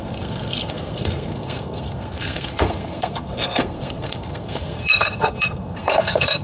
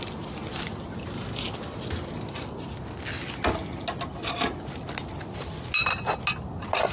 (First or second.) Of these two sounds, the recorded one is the second